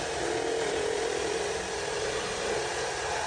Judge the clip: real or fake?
real